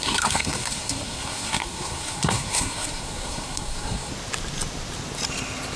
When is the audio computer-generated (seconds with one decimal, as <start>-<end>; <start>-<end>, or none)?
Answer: 0.0-4.1